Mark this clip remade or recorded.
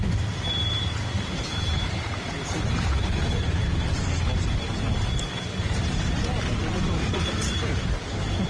remade